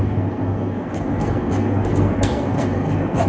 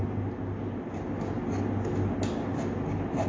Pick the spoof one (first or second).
first